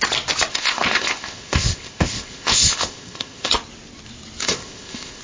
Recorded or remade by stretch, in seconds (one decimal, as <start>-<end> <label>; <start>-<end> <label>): 0.0-0.5 recorded; 0.5-3.5 remade; 3.5-4.4 recorded; 4.4-5.2 remade